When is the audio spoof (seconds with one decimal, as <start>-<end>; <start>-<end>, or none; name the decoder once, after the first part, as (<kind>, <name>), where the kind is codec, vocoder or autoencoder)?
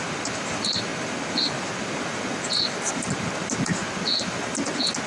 none